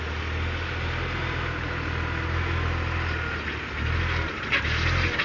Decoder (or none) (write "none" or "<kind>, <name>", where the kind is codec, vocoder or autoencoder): none